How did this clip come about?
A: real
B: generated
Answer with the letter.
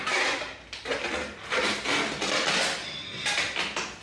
A